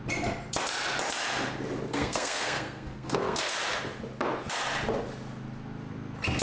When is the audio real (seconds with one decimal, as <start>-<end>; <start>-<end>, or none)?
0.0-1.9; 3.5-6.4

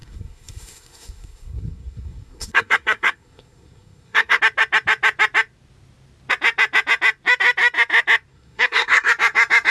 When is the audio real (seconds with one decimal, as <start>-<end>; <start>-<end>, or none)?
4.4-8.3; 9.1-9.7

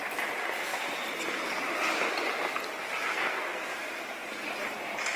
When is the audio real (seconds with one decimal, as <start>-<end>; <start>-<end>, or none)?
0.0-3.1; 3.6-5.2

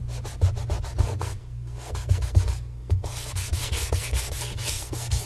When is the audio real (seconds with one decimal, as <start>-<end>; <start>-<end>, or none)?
0.0-1.0

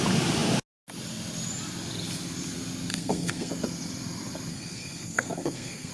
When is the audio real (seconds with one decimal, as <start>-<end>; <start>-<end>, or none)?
0.0-2.9; 3.5-4.5

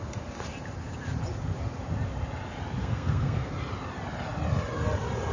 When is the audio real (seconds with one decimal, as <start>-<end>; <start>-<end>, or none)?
0.0-2.8; 3.5-5.3

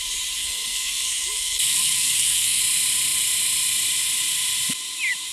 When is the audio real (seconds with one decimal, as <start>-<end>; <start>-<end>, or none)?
0.0-0.4; 2.6-5.3

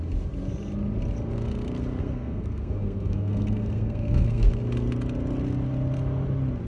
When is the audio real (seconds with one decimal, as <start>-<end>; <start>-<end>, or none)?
0.0-2.0; 4.5-6.7